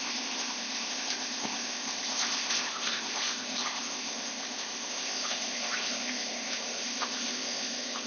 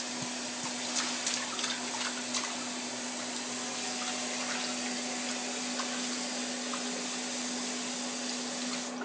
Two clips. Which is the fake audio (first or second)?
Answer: first